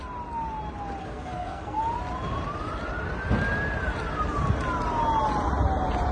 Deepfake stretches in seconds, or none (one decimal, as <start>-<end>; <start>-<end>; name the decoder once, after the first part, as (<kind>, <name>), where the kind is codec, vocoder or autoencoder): 1.0-1.8 (codec, SNAC)